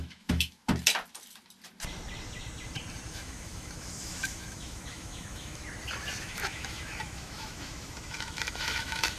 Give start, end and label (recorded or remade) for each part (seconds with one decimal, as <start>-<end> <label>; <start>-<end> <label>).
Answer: 0.0-0.6 remade; 0.6-3.1 recorded; 3.1-5.6 remade; 5.6-6.2 recorded; 6.2-9.2 remade